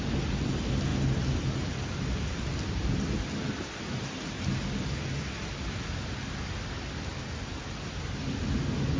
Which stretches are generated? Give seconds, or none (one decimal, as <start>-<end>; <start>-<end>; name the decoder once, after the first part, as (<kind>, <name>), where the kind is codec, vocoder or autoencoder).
none